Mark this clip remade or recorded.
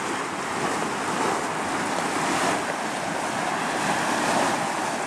recorded